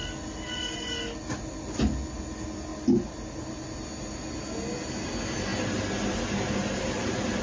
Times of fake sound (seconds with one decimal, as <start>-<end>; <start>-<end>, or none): none

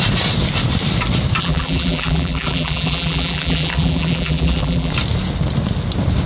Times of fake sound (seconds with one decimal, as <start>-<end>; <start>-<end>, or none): 1.4-4.9

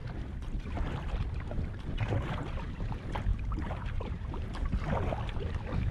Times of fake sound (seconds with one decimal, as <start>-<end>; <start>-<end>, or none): 3.3-4.5

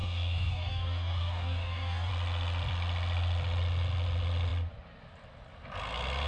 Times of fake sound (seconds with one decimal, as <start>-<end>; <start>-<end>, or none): 0.0-2.1

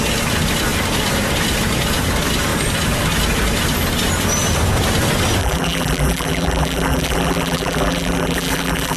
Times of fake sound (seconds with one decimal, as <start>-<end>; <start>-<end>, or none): 5.4-9.0

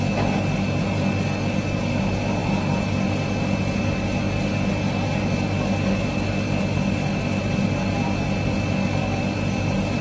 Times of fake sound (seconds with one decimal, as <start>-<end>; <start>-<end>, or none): 2.4-3.8